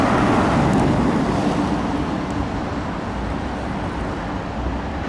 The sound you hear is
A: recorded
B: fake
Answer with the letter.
A